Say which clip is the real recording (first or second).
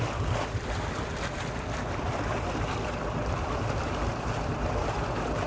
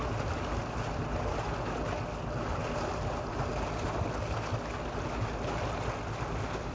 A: second